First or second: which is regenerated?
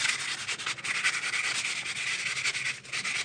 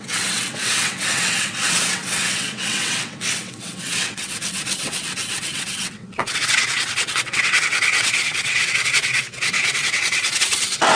second